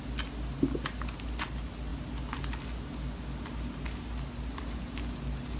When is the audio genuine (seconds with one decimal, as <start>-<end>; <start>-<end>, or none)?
0.0-5.6